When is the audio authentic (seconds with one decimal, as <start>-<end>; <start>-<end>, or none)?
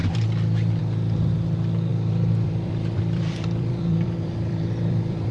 0.8-1.9